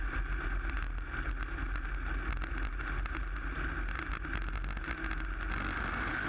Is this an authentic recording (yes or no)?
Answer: yes